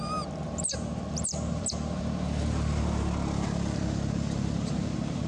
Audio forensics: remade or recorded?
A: remade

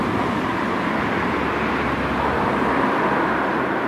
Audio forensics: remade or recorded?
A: recorded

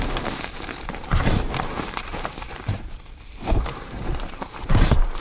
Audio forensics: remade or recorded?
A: remade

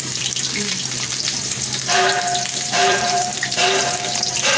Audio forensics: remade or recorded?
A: remade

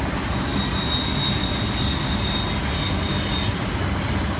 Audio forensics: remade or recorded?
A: recorded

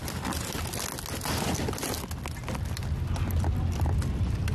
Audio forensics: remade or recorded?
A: recorded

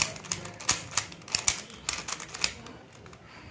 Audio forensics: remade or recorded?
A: recorded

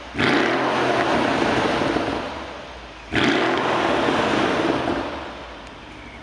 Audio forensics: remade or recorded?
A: recorded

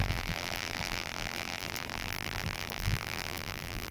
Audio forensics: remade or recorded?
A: remade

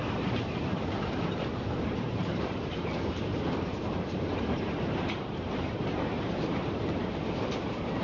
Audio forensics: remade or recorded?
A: remade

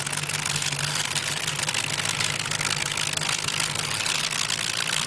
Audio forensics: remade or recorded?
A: recorded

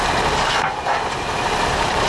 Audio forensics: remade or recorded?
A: recorded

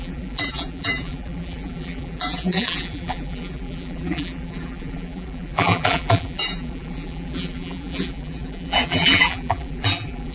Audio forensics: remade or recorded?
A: remade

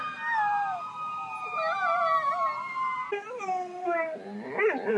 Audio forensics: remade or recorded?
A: remade